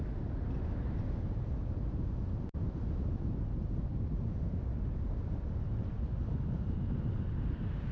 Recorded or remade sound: recorded